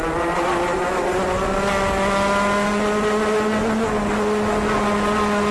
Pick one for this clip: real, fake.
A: real